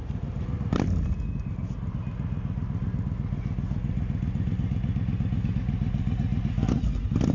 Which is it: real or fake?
real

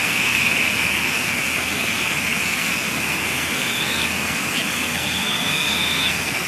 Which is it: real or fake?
fake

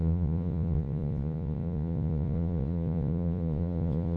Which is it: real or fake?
fake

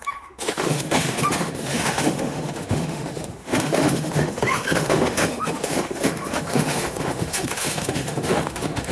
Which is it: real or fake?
fake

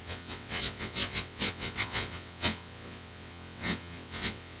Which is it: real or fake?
fake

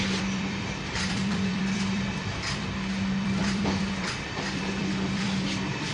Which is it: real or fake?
fake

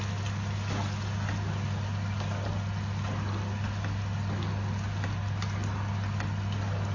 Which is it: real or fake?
real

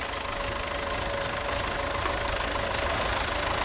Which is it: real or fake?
real